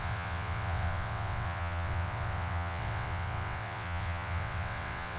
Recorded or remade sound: remade